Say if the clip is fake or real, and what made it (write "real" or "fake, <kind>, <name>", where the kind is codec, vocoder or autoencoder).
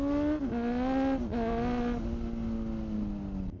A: real